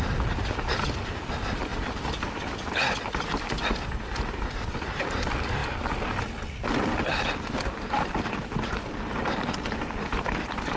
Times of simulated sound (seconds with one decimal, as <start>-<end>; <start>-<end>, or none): none